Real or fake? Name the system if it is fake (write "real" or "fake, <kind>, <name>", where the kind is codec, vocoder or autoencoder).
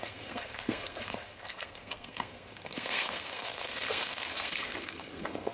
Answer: fake, codec, SNAC